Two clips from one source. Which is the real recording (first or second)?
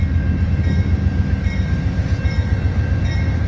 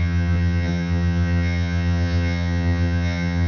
first